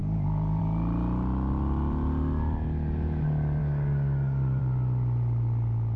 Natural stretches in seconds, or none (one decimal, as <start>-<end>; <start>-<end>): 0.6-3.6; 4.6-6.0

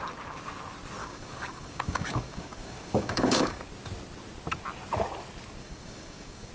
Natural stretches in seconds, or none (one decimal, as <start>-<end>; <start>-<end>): 0.0-1.0; 3.6-5.6

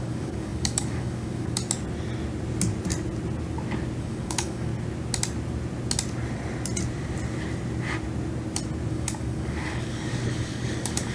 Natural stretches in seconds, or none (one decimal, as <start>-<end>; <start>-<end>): 1.6-4.0; 4.7-8.9

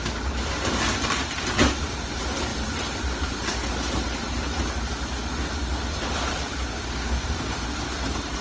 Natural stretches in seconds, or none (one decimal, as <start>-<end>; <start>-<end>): 0.0-6.7; 7.5-8.4